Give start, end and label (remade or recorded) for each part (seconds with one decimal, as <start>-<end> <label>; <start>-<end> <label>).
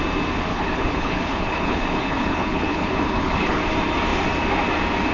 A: 0.0-0.5 recorded; 0.5-3.6 remade; 3.6-5.1 recorded